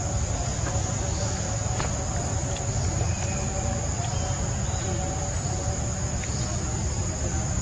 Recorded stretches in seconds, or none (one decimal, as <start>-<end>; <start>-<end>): 0.0-7.6